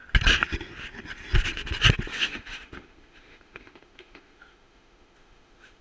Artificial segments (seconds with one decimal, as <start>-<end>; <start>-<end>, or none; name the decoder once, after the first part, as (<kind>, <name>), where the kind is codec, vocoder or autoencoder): 2.1-5.8 (autoencoder, DAC-VAE)